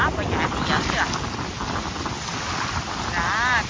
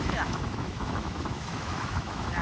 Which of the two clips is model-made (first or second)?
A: second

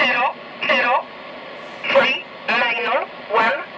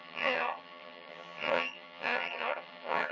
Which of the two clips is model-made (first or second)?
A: second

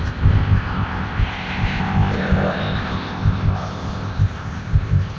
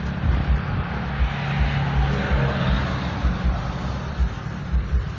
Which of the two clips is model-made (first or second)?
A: first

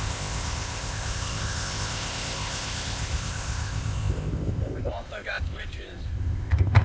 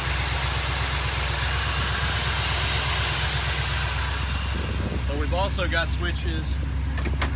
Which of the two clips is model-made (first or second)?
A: first